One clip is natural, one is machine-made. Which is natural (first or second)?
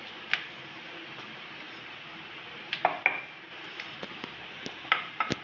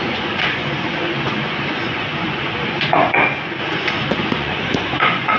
first